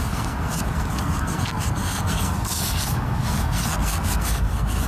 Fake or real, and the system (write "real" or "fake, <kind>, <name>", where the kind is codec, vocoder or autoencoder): fake, codec, SNAC